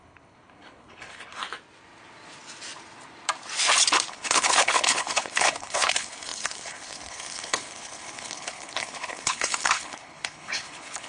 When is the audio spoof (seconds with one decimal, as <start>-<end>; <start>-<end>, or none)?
0.0-1.4; 4.1-11.1